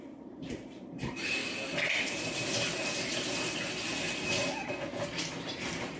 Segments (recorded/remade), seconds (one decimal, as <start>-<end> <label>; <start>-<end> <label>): 0.0-1.4 remade; 1.4-5.0 recorded; 5.0-6.0 remade